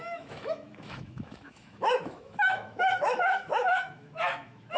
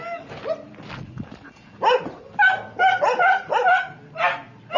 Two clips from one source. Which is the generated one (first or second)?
first